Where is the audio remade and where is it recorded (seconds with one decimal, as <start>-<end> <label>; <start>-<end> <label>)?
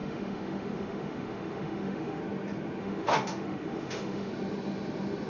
0.0-2.2 remade; 2.2-2.8 recorded; 2.8-4.3 remade; 4.3-5.3 recorded